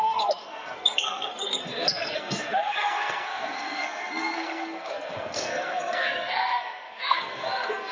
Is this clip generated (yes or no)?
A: yes